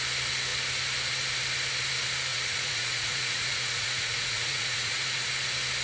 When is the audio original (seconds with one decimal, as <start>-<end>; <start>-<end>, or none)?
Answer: 0.0-2.3; 5.3-5.8